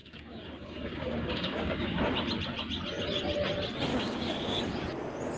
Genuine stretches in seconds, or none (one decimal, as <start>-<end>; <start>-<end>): 2.0-3.9; 4.6-5.4